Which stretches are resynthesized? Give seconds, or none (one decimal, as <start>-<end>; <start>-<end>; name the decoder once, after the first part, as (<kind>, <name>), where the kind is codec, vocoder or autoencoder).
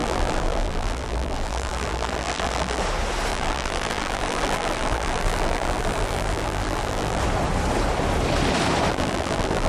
0.0-2.8 (vocoder, BigVGAN v2); 3.3-7.2; 8.9-9.7